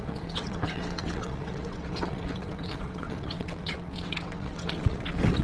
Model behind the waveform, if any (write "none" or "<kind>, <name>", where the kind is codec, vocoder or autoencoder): vocoder, WaveNeXt